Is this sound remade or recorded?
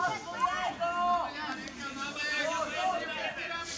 recorded